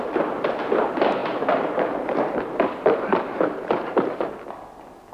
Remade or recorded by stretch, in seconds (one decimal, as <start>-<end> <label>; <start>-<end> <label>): 0.0-1.2 recorded; 1.2-4.3 remade; 4.3-5.1 recorded